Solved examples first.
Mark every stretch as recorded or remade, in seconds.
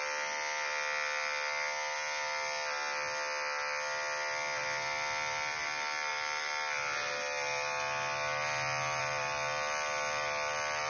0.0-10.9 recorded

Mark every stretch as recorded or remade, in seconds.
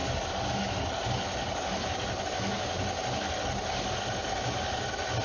0.0-5.2 recorded